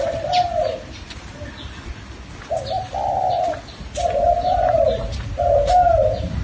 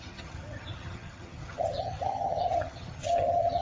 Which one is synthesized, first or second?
second